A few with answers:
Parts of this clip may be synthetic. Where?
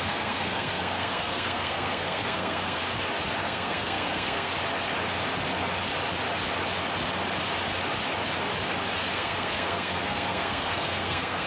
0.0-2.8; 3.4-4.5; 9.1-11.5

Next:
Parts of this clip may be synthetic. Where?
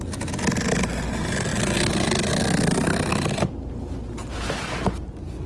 none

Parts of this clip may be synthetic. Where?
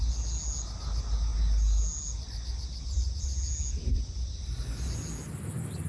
none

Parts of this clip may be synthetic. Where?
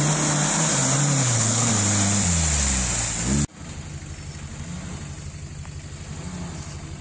1.2-1.7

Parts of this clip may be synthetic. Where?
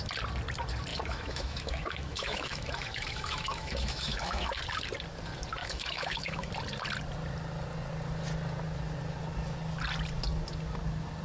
0.9-4.6; 5.6-6.5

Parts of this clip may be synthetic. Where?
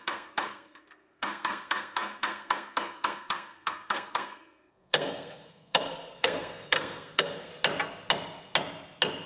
0.0-7.5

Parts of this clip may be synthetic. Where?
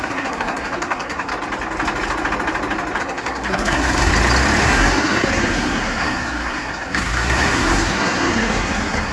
0.0-1.3; 3.0-4.1; 4.6-9.1